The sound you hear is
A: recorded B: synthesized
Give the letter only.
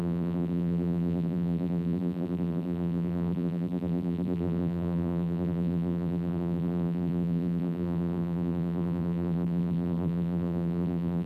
B